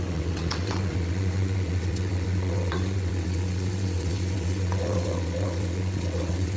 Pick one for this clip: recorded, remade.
remade